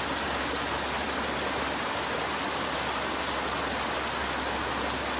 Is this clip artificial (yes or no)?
no